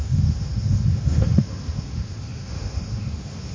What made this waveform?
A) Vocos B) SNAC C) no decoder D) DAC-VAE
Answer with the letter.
D